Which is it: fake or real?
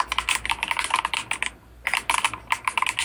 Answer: real